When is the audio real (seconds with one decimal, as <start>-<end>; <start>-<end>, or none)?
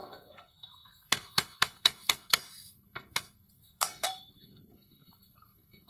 none